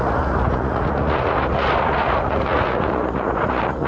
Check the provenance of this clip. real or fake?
fake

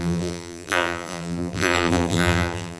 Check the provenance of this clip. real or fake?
fake